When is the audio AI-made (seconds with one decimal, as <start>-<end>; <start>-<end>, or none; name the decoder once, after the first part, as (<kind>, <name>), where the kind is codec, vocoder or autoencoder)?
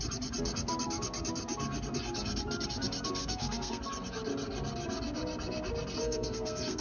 3.2-3.8 (codec, SNAC); 6.0-6.8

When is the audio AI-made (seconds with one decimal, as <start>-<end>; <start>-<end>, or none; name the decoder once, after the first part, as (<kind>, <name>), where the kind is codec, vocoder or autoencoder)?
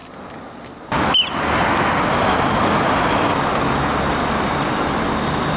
none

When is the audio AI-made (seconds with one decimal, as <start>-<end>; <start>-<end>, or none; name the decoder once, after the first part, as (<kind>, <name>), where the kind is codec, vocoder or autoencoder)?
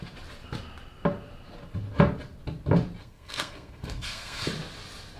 3.0-4.5 (codec, SNAC)